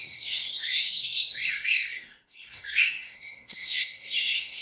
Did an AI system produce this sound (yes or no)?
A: yes